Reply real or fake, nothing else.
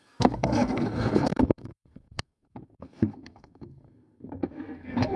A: fake